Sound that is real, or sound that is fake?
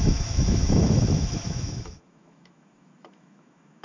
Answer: fake